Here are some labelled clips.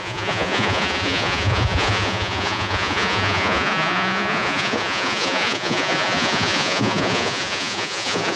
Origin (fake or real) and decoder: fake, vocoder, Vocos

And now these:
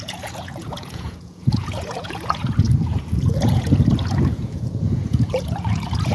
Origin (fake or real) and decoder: fake, vocoder, Vocos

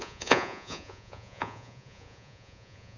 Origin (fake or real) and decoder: fake, vocoder, Vocos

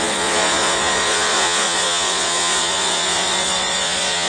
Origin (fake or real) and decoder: fake, vocoder, Vocos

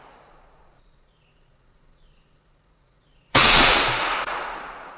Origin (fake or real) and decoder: fake, vocoder, Vocos